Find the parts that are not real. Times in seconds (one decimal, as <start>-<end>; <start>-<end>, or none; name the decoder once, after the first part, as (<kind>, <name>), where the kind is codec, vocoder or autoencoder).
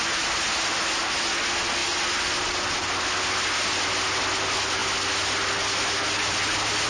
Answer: none